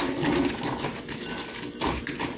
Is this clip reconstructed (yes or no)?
no